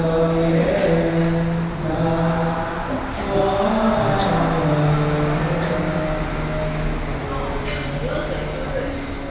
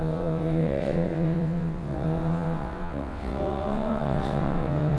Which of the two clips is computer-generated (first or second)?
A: second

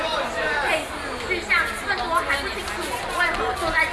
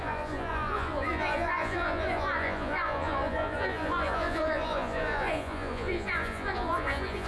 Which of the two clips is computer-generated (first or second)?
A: second